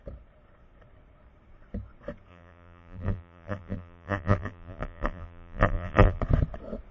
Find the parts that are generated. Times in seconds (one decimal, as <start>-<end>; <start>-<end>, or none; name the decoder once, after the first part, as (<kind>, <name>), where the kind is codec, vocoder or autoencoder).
2.3-6.2 (vocoder, BigVGAN v2)